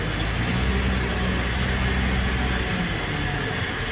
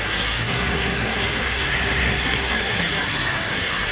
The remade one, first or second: second